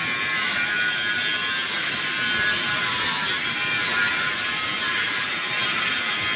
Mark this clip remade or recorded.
recorded